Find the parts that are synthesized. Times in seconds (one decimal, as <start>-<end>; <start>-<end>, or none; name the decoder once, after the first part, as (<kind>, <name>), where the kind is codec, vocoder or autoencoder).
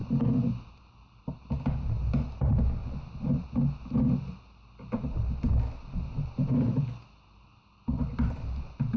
none